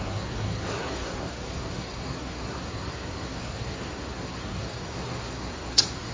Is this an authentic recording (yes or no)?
no